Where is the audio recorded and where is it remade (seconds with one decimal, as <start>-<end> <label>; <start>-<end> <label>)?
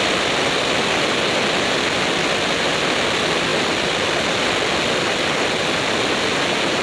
0.0-6.8 recorded